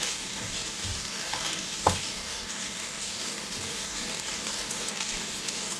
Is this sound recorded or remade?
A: remade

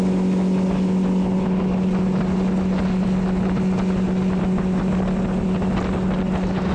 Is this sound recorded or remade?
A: recorded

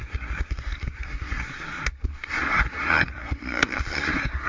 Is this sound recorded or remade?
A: remade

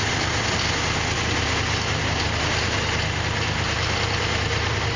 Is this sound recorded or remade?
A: recorded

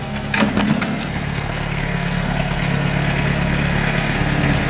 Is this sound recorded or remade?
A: remade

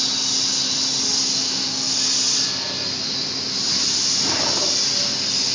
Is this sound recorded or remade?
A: recorded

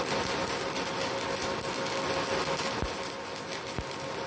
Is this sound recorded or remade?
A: recorded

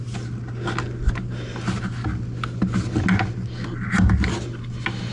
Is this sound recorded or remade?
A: recorded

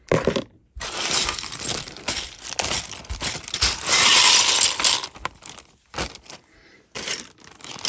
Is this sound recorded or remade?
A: recorded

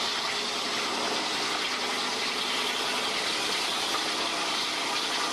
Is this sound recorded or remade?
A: recorded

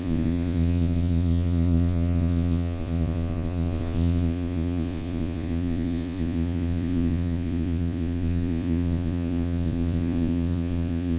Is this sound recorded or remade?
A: remade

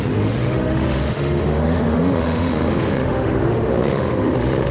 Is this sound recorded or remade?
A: remade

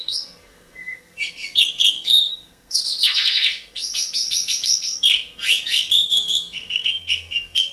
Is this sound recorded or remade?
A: remade